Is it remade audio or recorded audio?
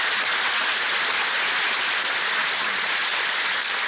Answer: recorded